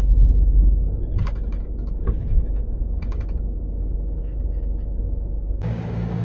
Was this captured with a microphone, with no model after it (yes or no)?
no